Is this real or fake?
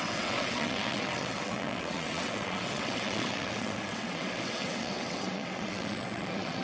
fake